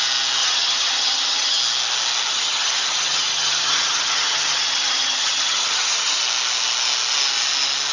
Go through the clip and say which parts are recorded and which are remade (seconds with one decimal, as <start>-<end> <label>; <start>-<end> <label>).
0.0-0.4 recorded; 0.4-1.6 remade; 1.6-2.3 recorded; 2.3-6.2 remade; 6.2-7.9 recorded